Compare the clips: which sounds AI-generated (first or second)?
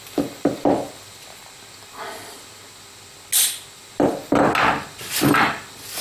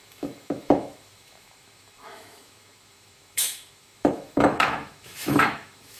second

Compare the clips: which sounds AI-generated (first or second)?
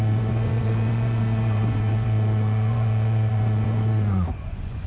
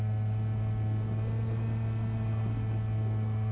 first